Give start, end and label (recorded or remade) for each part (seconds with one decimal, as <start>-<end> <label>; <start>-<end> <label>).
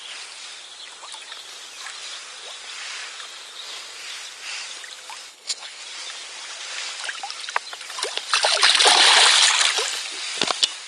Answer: 0.0-5.3 recorded; 5.3-5.8 remade; 5.8-10.9 recorded